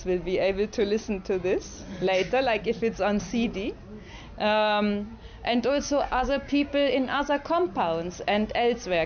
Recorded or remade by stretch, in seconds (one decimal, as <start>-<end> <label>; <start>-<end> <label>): 0.0-5.3 recorded; 5.3-6.9 remade; 6.9-9.1 recorded